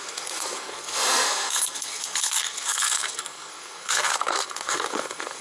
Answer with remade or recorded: remade